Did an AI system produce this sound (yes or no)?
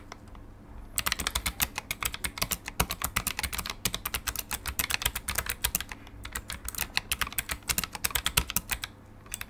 no